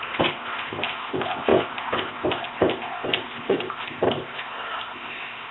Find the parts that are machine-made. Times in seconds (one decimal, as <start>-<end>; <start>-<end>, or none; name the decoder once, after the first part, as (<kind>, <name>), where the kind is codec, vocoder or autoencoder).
0.0-5.5 (codec, ZipCodec)